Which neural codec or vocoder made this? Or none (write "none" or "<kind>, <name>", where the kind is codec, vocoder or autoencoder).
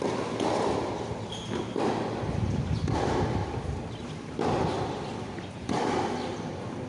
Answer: none